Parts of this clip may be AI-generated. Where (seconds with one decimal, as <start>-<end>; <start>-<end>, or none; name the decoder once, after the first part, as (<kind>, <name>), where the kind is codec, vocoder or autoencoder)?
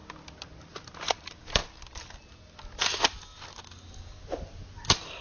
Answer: none